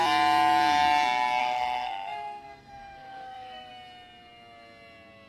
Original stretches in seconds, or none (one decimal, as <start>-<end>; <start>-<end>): 0.0-1.4; 3.7-5.3